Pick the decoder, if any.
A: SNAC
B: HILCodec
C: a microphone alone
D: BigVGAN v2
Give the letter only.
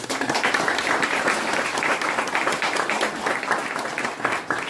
C